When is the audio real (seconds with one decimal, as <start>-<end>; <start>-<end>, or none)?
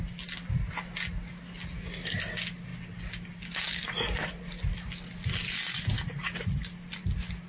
0.0-7.5